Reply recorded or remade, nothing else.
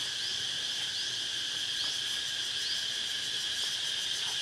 recorded